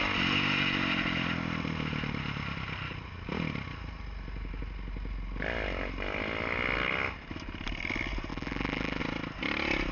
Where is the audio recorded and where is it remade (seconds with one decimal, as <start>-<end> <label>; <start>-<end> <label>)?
0.0-8.3 recorded; 8.3-9.0 remade; 9.0-9.9 recorded